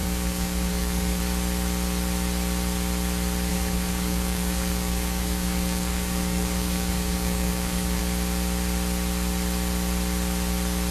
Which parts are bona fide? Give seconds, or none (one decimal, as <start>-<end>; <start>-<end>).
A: 1.2-3.5; 8.0-10.9